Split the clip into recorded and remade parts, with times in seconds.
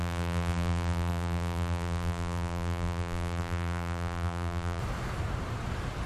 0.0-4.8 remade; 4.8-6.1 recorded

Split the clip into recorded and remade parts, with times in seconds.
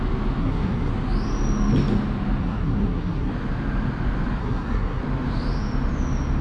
0.0-0.4 recorded; 0.4-0.9 remade; 0.9-2.4 recorded; 2.4-3.3 remade; 3.3-4.4 recorded; 4.4-5.0 remade; 5.0-6.4 recorded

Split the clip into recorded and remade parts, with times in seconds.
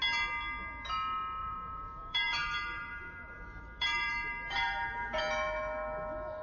0.0-1.4 recorded; 1.4-5.2 remade; 5.2-6.4 recorded